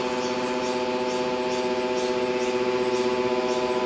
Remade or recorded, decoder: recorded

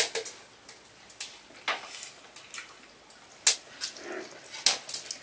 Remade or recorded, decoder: recorded